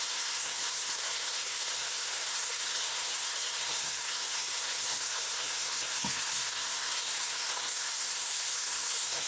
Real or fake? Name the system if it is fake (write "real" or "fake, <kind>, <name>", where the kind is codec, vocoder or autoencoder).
fake, codec, SNAC